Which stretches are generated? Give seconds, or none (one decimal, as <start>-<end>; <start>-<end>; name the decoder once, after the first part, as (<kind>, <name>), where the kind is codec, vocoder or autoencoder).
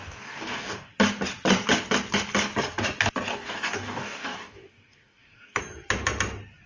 0.0-0.9 (codec, DAC); 3.3-5.6